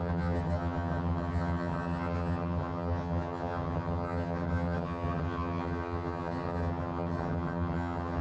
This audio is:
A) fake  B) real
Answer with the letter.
A